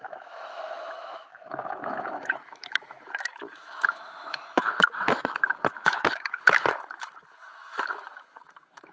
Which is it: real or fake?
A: fake